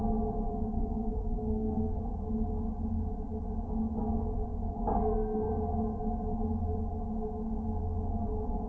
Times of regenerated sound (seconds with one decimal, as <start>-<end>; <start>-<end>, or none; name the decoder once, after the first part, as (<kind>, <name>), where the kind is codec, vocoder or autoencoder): 0.5-2.0 (codec, SNAC); 5.0-5.5